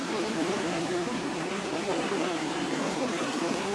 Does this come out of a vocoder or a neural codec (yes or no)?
yes